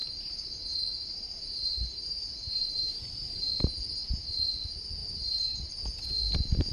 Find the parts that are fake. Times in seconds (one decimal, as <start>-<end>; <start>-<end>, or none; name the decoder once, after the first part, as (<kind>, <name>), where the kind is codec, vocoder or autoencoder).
0.0-0.6 (vocoder, BigVGAN v2); 1.7-3.4; 5.0-5.7